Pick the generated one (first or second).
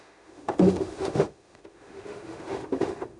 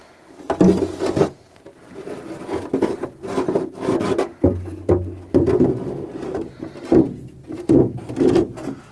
first